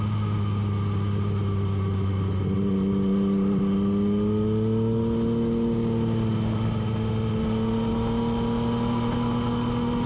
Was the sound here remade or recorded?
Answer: recorded